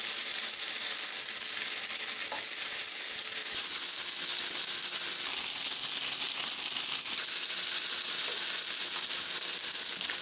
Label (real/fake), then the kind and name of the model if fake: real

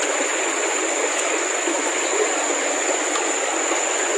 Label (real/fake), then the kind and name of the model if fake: fake, vocoder, Vocos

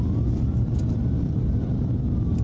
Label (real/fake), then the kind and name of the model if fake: real